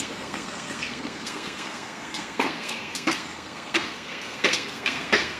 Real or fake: fake